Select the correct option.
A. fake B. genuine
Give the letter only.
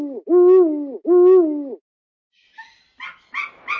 B